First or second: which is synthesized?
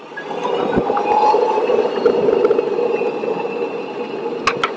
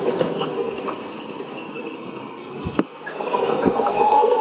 second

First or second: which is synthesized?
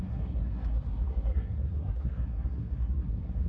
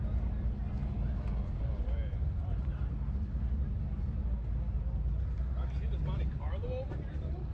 first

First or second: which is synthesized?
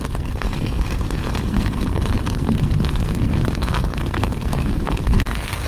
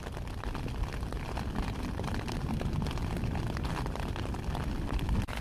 first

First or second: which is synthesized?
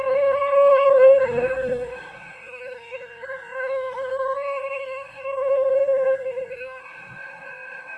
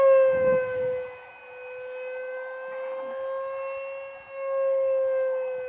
first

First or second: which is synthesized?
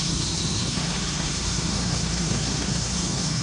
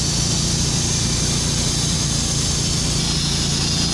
first